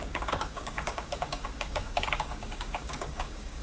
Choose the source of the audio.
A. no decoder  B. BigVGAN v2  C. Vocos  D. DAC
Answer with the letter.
D